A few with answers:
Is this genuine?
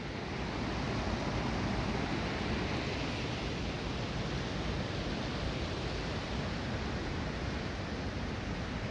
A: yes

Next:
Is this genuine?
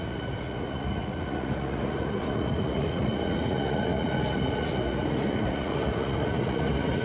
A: no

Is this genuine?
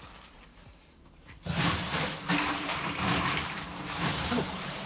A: no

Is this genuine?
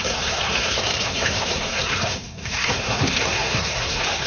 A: no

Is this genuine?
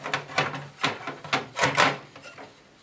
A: yes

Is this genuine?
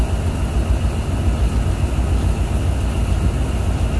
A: yes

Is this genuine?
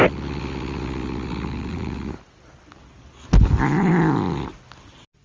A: yes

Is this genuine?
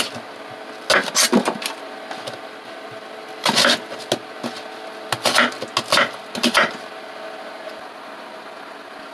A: yes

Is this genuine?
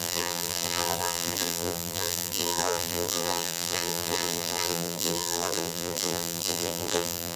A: no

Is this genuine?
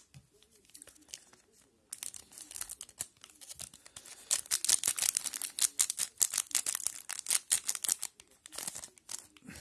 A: yes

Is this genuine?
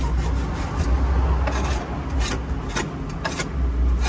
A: yes